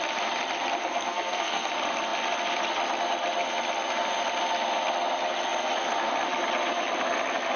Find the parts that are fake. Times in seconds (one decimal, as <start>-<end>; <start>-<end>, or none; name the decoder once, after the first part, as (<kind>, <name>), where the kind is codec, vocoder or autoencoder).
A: 0.8-1.7 (codec, SNAC)